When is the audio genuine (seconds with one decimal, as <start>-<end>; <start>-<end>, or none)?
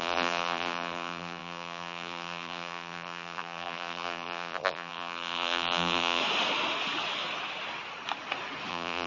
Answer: 6.2-8.7